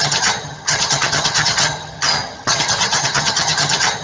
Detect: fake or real fake